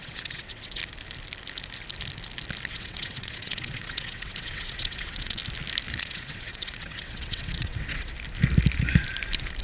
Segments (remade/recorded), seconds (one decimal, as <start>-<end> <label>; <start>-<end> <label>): 0.0-0.8 remade; 0.8-2.7 recorded; 2.7-5.4 remade; 5.4-6.0 recorded; 6.0-8.1 remade; 8.1-9.6 recorded